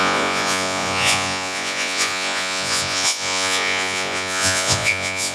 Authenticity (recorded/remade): remade